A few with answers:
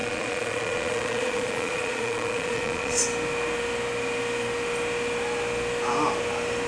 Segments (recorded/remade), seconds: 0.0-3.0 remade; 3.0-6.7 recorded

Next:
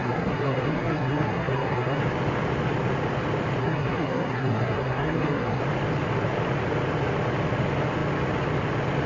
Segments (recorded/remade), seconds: 0.0-2.0 remade; 2.0-3.6 recorded; 3.6-5.6 remade; 5.6-9.1 recorded